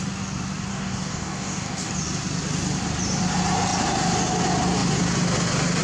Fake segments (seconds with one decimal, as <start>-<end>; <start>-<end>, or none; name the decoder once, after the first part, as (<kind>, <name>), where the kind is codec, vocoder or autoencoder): 0.7-1.9 (codec, DAC)

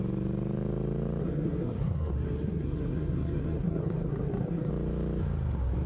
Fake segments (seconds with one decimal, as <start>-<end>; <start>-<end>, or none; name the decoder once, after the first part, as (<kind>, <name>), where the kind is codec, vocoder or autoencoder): 1.2-4.7 (codec, SNAC)

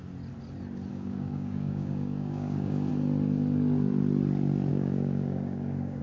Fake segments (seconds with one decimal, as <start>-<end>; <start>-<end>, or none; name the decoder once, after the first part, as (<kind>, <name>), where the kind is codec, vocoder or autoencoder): 0.9-2.9 (codec, DAC); 4.7-6.0

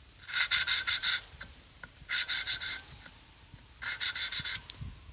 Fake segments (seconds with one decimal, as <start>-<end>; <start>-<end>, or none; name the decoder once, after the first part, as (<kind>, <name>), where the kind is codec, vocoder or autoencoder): 0.7-2.6 (vocoder, BigVGAN v2)

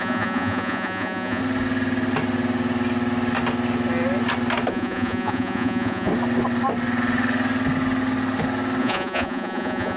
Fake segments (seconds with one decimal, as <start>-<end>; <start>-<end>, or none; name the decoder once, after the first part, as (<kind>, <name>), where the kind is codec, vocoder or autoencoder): 0.0-1.4 (vocoder, Vocos); 4.7-6.1; 8.8-10.0